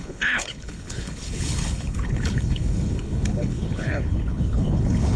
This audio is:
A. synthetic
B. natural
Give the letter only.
A